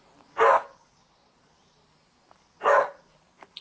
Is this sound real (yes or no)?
yes